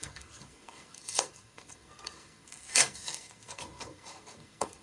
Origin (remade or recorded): remade